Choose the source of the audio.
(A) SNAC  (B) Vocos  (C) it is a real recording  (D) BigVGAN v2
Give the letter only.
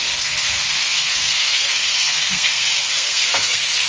A